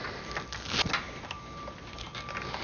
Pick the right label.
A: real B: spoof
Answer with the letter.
A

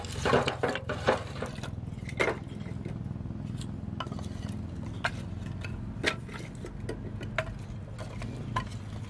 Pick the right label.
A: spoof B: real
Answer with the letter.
B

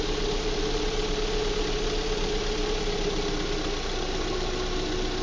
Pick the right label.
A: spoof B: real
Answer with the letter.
B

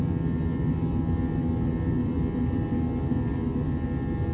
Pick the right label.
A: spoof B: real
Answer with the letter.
B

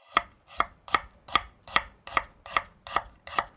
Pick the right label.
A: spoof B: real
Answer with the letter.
A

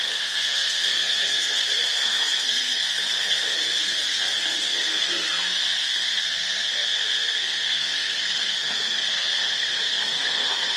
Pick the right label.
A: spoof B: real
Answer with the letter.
A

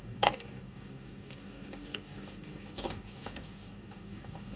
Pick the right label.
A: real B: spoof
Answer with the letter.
B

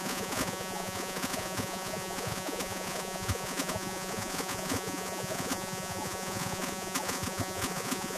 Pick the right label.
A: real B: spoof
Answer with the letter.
B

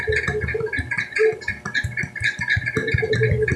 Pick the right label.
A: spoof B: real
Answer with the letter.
B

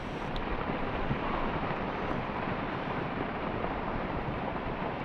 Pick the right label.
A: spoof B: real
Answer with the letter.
A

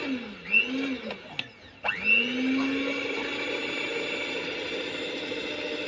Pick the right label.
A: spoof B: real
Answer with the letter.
B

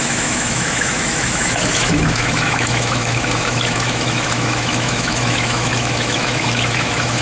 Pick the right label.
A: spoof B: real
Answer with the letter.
A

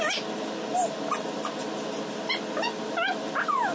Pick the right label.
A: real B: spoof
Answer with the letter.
A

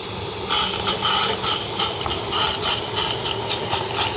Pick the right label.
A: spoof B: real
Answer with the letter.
B